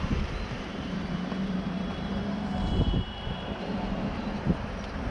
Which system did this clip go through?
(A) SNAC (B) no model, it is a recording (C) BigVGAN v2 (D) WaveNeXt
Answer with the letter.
C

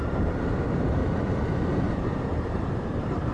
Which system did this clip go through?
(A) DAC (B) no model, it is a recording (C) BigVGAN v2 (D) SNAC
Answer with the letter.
C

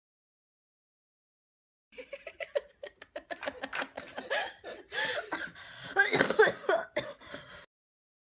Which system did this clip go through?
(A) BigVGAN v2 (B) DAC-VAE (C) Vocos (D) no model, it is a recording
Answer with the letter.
A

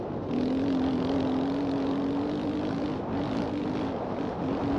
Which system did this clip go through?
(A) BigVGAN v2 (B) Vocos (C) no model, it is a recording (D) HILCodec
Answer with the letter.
C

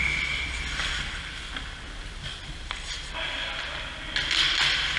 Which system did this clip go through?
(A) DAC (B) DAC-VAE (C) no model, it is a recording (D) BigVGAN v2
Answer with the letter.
C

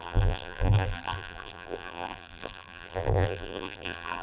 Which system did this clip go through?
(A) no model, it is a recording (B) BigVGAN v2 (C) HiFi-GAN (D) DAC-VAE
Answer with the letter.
B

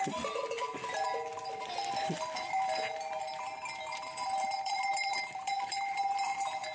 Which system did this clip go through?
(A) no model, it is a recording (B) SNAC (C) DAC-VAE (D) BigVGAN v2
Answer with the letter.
D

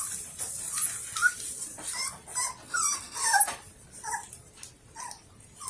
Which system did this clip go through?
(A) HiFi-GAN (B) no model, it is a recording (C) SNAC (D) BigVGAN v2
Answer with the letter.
D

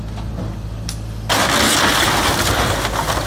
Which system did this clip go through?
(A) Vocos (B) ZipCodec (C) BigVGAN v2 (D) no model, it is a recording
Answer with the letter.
D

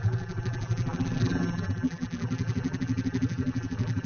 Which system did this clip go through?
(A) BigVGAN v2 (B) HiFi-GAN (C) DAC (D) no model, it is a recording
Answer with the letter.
A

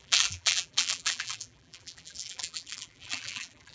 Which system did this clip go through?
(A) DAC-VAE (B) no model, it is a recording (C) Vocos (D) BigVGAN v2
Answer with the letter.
D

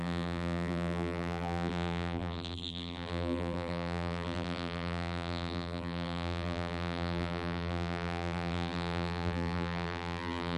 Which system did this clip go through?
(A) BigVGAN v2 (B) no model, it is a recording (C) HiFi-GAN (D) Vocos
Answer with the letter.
A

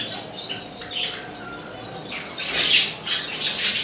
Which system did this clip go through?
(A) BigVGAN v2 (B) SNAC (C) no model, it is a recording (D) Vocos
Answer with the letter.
C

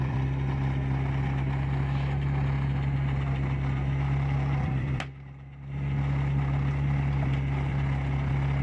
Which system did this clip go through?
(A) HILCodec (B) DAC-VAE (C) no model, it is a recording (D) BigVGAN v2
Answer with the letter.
D